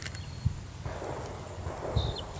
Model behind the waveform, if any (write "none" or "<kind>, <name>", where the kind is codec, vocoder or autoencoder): none